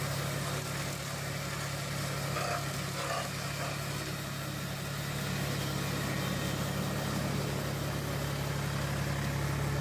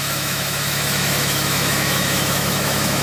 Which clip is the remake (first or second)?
second